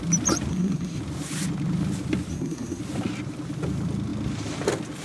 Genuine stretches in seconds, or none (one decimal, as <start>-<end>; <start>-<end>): 0.0-0.5; 1.0-2.3; 2.8-5.0